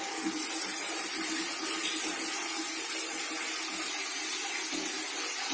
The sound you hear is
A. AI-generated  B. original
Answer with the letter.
B